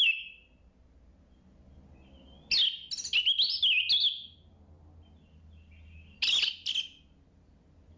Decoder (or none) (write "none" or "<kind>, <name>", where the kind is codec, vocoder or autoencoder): none